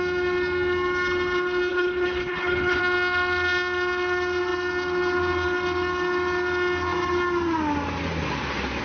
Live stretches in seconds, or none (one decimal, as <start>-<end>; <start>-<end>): 0.0-1.7; 2.8-8.8